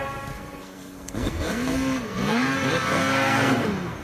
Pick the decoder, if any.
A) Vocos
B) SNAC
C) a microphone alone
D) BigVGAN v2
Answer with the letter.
B